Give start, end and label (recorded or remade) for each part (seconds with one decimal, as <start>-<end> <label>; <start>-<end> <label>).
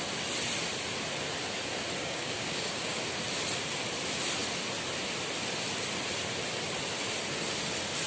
0.0-2.0 recorded; 2.0-3.0 remade; 3.0-8.1 recorded